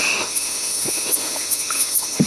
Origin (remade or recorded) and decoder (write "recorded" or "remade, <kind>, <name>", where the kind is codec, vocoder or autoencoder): remade, autoencoder, DAC-VAE